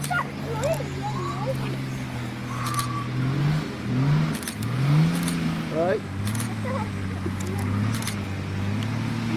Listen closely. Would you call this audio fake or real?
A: real